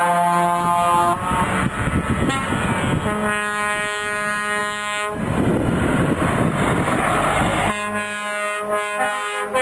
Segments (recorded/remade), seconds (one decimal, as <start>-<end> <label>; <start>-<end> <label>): 0.0-9.6 recorded